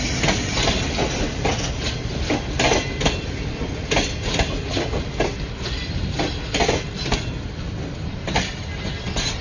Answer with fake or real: real